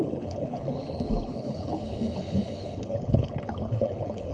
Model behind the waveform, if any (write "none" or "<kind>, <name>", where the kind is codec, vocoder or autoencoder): codec, HILCodec